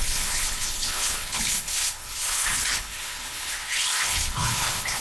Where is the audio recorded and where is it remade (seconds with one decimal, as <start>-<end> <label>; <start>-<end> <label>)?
0.0-5.0 remade